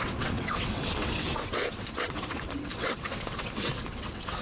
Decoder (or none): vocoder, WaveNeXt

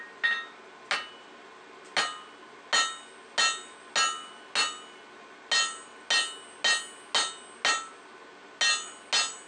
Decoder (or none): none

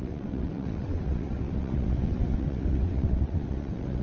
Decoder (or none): vocoder, WaveNeXt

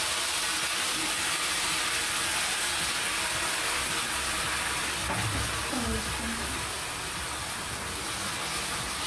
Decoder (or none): none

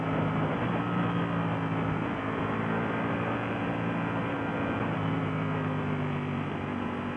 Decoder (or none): none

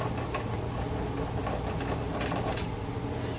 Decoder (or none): none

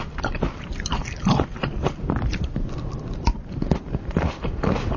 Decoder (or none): none